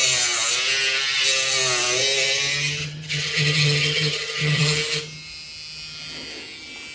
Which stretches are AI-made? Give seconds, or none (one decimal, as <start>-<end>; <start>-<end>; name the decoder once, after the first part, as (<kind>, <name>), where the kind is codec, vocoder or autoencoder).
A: 2.8-4.6 (vocoder, HiFi-GAN)